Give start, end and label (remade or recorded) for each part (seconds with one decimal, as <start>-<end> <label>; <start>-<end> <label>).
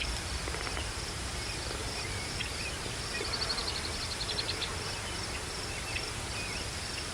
0.0-3.6 remade; 3.6-7.1 recorded